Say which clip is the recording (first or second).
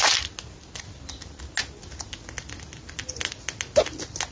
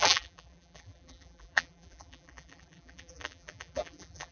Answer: first